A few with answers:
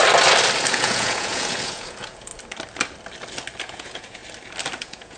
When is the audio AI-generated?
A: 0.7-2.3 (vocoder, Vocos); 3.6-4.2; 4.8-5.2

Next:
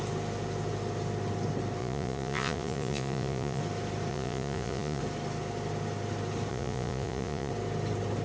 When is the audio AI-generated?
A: 1.8-3.6 (vocoder, Vocos); 4.1-5.0; 6.5-7.5

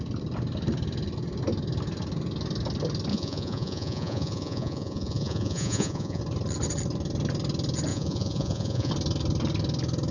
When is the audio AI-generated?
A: 3.1-6.2 (vocoder, Vocos); 7.9-8.9

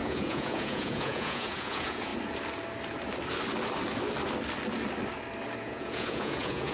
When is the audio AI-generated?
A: 0.0-2.1 (vocoder, Vocos); 5.6-6.7

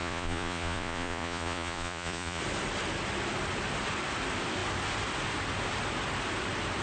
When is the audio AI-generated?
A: 0.0-2.4 (vocoder, Vocos)

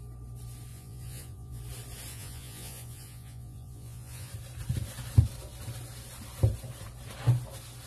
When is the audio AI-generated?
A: 0.7-1.6 (vocoder, Vocos); 2.1-4.3

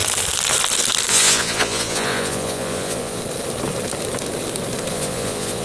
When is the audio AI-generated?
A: 1.1-3.2 (vocoder, Vocos); 4.9-5.6

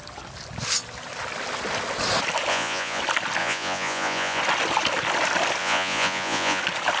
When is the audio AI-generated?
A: 2.5-3.0 (vocoder, Vocos); 3.4-4.4; 5.6-6.6